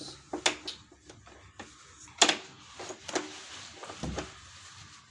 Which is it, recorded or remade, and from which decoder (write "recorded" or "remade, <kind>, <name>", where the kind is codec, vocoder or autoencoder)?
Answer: recorded